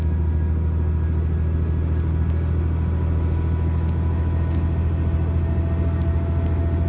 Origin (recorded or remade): recorded